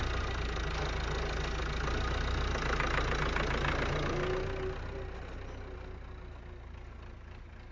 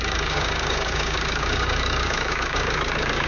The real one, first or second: first